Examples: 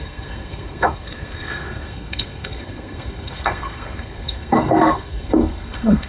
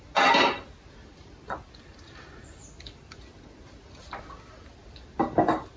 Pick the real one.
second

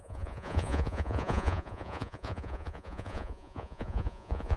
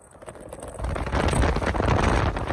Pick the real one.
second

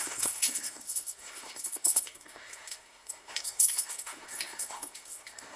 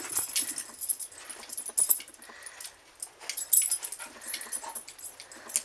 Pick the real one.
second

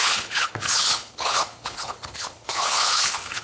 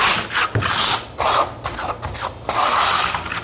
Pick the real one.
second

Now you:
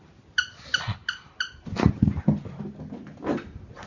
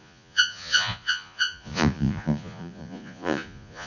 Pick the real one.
first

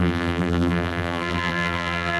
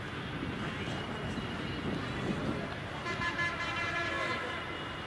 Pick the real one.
second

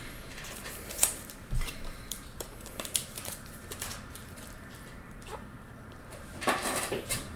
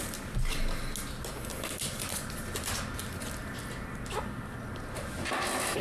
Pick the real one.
second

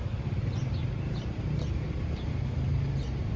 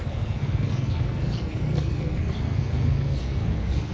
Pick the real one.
first